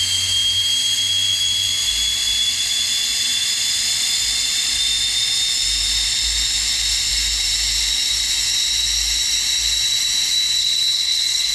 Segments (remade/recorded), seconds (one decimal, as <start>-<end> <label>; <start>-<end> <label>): 0.0-10.6 recorded; 10.6-11.5 remade